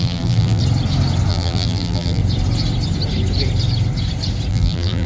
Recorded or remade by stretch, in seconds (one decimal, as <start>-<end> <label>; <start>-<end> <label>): 0.0-0.6 remade; 0.6-1.3 recorded; 1.3-2.2 remade; 2.2-4.5 recorded; 4.5-5.1 remade